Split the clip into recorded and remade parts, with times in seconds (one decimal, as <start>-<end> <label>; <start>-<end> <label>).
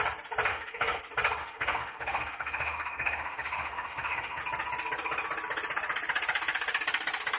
0.0-0.5 recorded; 0.5-1.0 remade; 1.0-1.4 recorded; 1.4-4.4 remade; 4.4-7.4 recorded